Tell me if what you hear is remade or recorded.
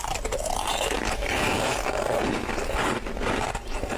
recorded